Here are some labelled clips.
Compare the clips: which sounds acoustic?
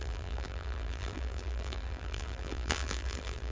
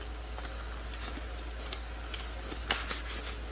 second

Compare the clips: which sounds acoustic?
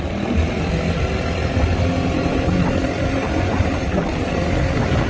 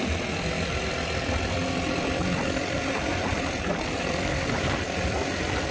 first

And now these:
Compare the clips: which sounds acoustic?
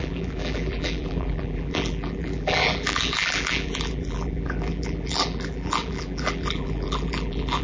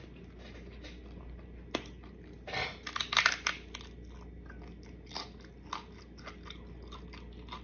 second